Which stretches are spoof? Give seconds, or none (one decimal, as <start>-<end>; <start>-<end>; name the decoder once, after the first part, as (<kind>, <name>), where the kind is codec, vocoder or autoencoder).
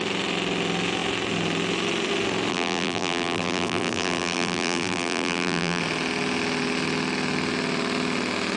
2.5-5.8 (vocoder, BigVGAN v2)